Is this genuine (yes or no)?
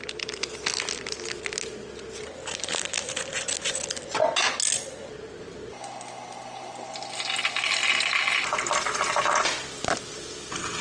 yes